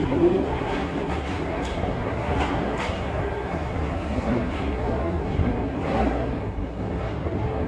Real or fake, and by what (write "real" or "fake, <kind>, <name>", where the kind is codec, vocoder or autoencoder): fake, codec, SNAC